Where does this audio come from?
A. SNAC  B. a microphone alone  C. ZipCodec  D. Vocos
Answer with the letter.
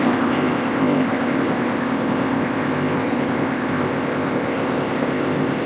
C